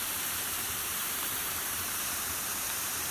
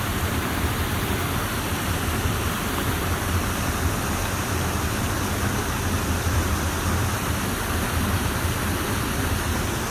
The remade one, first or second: first